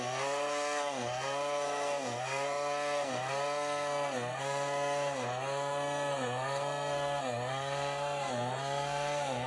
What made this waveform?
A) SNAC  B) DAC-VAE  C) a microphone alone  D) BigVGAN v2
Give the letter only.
A